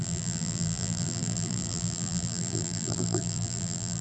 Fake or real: fake